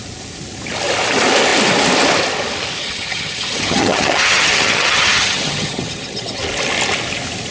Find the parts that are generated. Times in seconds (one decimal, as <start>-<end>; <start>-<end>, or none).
2.8-6.4